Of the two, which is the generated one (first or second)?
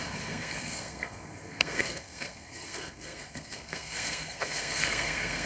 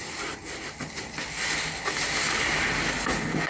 first